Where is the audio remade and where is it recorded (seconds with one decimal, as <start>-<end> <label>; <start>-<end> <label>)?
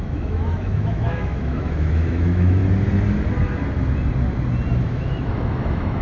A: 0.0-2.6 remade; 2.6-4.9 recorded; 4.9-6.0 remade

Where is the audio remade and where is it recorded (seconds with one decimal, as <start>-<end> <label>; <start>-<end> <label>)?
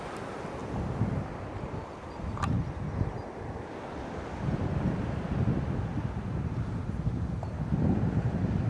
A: 0.0-8.7 recorded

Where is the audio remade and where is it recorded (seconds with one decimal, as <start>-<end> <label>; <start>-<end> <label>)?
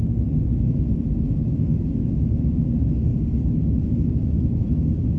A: 0.0-3.1 remade; 3.1-3.8 recorded; 3.8-5.2 remade